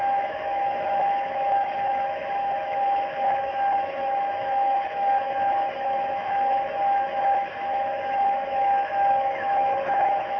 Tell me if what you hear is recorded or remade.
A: remade